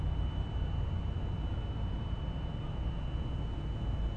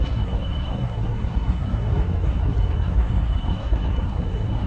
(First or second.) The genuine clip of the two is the first